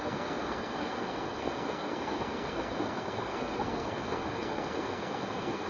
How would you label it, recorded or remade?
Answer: remade